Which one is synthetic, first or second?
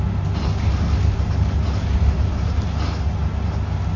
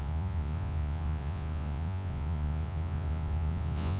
second